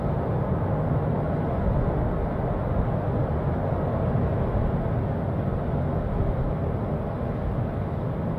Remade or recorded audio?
recorded